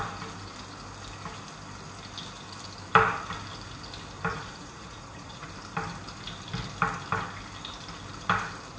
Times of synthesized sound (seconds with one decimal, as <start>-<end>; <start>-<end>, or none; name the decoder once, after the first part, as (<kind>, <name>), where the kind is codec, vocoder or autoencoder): 4.3-5.5 (vocoder, Vocos)